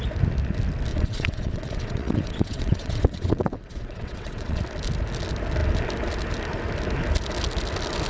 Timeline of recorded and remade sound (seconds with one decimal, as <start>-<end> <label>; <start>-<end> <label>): 0.0-0.9 recorded; 0.9-4.6 remade; 4.6-8.1 recorded